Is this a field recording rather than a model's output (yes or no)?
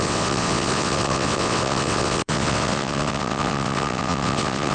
no